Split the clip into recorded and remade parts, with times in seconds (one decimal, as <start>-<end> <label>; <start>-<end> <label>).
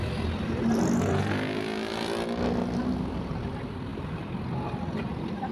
0.0-5.5 recorded